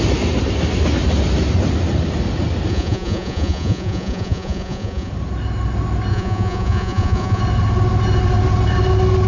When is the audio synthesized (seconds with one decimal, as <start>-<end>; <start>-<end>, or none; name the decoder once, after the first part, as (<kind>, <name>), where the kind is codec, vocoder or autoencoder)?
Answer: 2.7-5.1 (vocoder, Vocos); 6.1-7.4